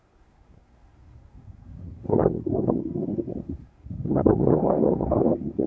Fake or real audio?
fake